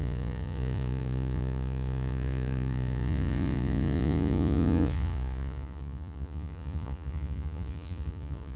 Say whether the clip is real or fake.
fake